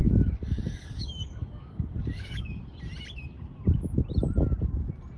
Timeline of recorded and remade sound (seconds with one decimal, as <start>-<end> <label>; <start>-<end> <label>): 0.0-2.6 remade; 2.6-5.2 recorded